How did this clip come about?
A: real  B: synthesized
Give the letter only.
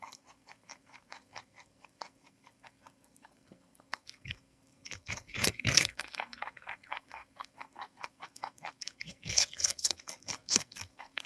B